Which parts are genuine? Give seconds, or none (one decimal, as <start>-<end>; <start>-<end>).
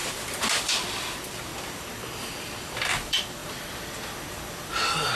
0.0-0.6; 1.5-2.3; 3.4-4.8